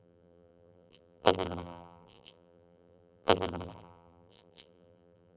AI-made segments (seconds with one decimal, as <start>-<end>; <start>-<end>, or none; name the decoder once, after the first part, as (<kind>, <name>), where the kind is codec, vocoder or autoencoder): 0.0-5.4 (vocoder, BigVGAN v2)